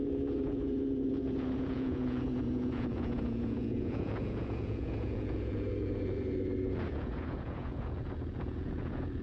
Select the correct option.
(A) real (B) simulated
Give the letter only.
B